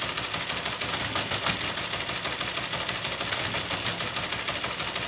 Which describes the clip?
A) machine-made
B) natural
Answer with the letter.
B